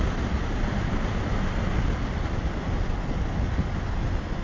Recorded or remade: recorded